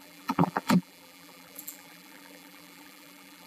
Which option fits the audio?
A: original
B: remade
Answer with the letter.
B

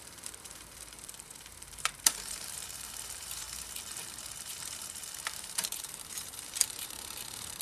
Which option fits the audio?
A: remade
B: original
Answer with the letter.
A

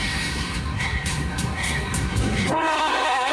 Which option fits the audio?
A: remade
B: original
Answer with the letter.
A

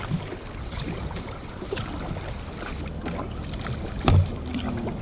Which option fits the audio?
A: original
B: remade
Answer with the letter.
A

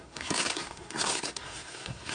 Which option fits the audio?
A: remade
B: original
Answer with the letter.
A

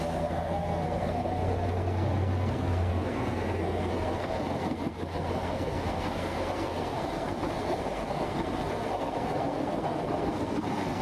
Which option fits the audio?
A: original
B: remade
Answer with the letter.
B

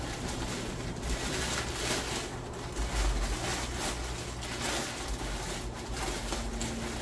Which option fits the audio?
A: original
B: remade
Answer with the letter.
A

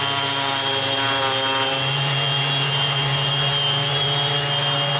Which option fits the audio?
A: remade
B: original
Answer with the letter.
B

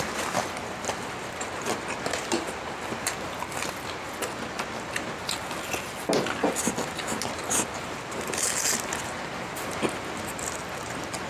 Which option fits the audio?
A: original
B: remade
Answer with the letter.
A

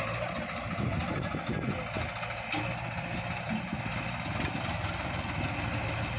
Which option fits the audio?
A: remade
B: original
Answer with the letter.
B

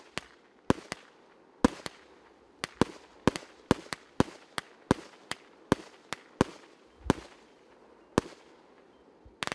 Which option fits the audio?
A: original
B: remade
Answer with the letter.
A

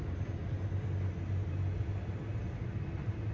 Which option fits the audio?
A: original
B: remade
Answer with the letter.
A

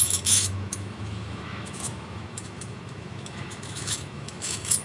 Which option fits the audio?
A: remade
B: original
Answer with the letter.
A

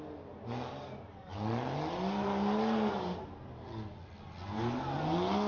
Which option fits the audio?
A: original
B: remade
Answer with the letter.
A